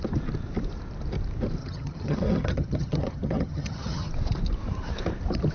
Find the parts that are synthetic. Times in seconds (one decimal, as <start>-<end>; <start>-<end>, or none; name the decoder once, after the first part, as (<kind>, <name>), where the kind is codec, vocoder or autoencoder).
1.6-4.1 (vocoder, HiFi-GAN)